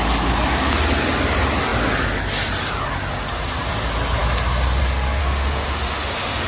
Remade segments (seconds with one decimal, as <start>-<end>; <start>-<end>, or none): 5.2-6.5